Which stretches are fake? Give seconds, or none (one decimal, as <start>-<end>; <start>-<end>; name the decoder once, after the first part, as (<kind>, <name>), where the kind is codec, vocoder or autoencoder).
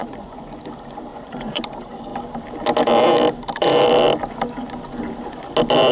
0.0-0.6 (vocoder, Vocos); 1.1-1.6